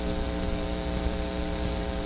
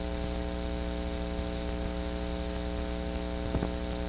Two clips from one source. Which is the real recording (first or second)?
second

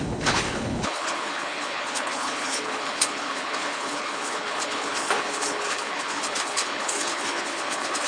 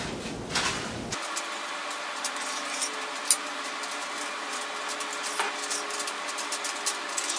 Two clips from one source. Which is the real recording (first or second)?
second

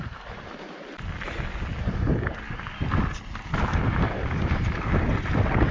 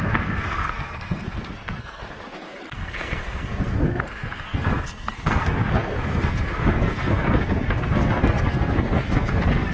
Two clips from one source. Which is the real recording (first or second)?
first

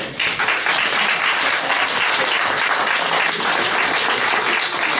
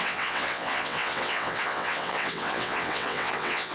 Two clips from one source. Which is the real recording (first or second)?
first